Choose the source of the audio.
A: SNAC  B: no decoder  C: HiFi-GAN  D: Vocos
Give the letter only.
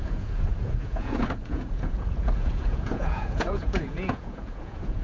D